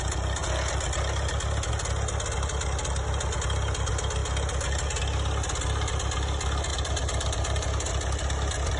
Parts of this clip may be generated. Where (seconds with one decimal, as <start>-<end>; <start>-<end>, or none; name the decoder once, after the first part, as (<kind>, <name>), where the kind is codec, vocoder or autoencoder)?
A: 6.7-7.9 (vocoder, BigVGAN v2)